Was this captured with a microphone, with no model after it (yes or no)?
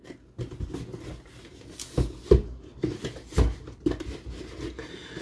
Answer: yes